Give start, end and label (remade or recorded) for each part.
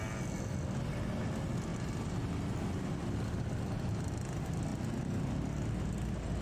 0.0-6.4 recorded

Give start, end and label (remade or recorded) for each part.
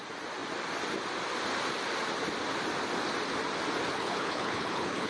0.0-3.9 recorded; 3.9-5.1 remade